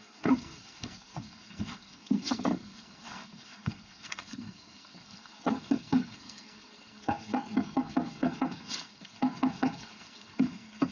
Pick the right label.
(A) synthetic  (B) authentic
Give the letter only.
A